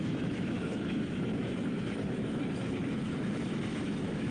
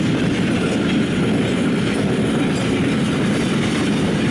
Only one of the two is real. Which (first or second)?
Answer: second